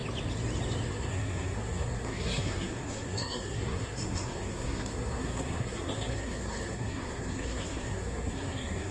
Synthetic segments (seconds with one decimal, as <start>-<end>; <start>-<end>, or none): 0.9-8.9